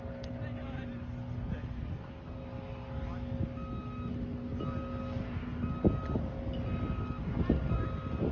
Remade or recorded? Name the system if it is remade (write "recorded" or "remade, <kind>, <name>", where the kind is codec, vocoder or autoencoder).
recorded